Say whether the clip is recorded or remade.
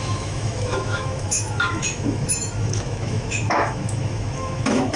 remade